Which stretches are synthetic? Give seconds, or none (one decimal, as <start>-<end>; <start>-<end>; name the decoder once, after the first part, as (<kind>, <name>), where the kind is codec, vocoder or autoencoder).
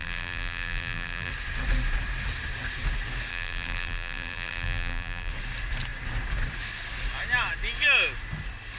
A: 0.0-1.3 (vocoder, BigVGAN v2); 3.3-5.3